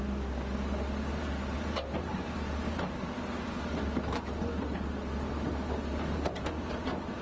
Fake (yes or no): no